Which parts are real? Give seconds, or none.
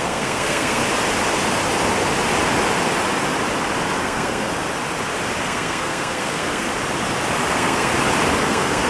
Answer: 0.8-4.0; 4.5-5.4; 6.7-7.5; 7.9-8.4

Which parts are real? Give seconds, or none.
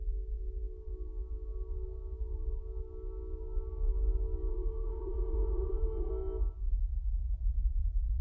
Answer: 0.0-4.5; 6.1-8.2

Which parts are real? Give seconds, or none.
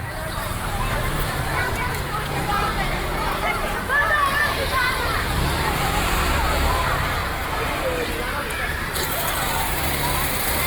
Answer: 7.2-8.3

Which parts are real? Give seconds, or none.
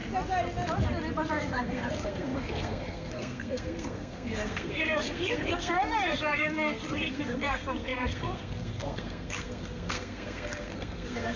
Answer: 0.0-1.3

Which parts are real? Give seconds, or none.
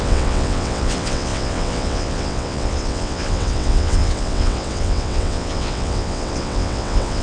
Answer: none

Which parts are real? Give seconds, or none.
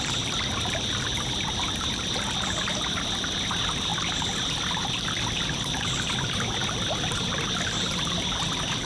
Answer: 0.0-8.8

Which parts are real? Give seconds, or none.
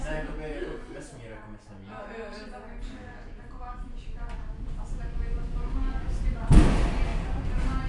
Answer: 0.0-7.1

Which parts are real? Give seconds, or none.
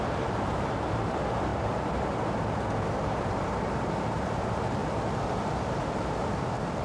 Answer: none